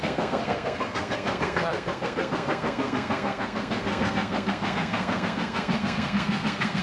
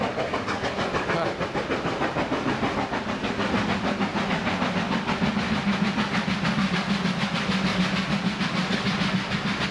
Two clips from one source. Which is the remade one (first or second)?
first